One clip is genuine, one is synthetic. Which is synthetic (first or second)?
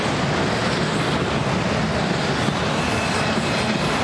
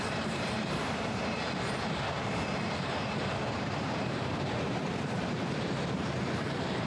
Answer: second